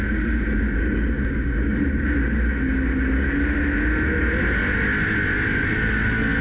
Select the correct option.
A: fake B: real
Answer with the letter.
B